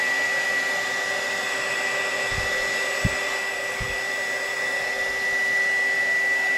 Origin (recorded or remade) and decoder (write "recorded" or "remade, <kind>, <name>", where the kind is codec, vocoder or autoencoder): recorded